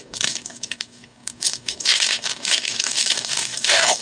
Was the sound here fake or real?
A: fake